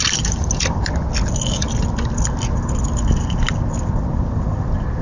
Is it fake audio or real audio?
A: real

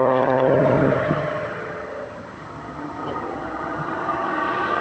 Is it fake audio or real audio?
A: fake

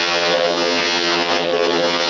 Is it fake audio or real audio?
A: fake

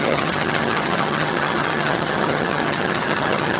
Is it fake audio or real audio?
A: fake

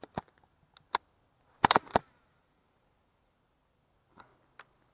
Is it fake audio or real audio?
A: real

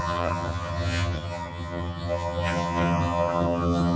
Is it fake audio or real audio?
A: fake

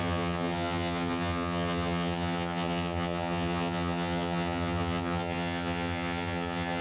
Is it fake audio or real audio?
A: fake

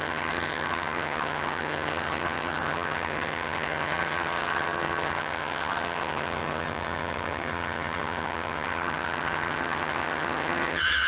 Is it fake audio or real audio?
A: fake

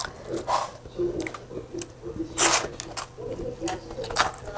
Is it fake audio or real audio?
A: real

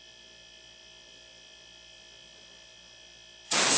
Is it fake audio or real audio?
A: real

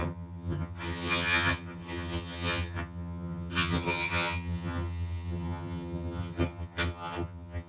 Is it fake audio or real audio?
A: fake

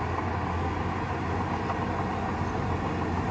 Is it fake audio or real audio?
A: real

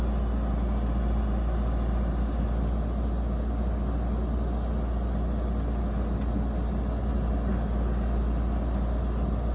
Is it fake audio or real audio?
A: real